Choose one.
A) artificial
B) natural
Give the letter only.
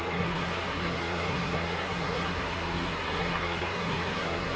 A